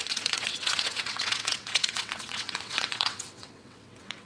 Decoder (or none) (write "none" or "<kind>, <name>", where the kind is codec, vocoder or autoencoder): vocoder, WaveNeXt